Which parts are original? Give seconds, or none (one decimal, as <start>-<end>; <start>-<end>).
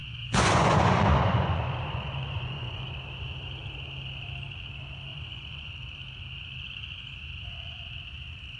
2.8-5.1; 5.7-8.6